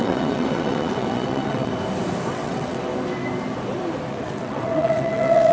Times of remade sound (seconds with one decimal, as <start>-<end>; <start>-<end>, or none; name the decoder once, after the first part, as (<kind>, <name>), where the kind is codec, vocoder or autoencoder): 0.0-1.7 (vocoder, WaveNeXt); 2.3-2.9; 4.1-5.5